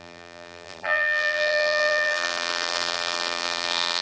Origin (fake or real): fake